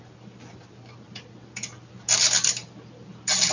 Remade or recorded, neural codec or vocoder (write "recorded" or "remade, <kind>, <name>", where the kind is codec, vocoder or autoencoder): recorded